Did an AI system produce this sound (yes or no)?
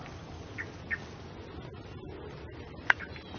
no